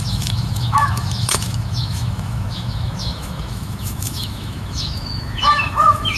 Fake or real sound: fake